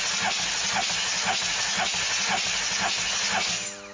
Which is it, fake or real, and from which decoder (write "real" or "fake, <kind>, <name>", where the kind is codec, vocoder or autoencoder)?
real